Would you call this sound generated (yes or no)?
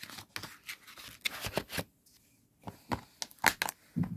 no